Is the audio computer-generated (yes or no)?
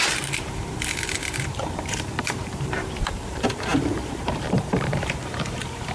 yes